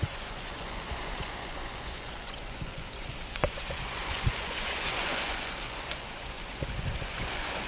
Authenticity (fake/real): fake